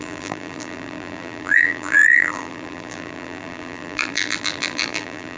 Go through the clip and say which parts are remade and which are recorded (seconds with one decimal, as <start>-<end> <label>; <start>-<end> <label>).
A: 0.0-5.4 remade